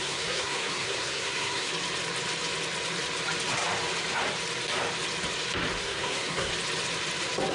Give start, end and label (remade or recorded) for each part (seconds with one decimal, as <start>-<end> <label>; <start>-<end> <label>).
0.0-1.7 remade; 1.7-5.8 recorded; 5.8-6.5 remade; 6.5-7.5 recorded